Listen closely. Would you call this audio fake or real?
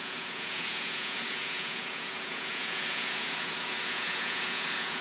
fake